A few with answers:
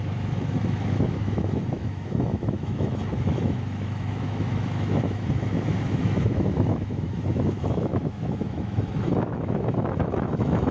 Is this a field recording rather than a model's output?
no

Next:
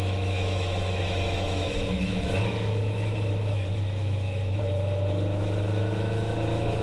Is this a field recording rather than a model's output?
no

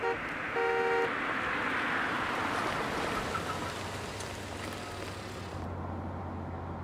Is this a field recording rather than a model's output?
yes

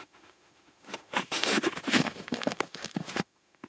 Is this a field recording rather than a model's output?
no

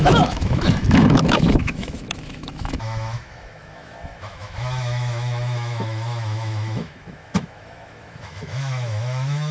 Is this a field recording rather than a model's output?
no